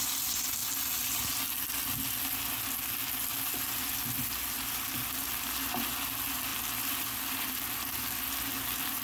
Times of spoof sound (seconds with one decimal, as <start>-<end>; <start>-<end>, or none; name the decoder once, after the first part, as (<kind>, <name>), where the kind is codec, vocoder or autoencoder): none